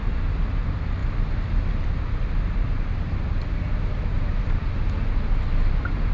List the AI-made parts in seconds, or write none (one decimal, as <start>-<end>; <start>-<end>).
none